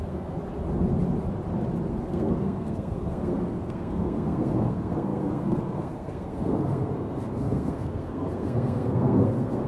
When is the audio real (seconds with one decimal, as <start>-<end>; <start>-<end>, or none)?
0.4-1.9